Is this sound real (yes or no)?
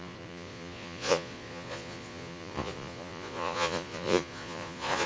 no